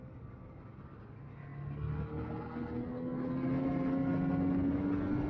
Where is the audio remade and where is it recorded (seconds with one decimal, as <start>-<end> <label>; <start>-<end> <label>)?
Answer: 0.0-5.3 recorded